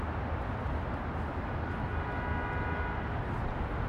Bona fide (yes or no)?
yes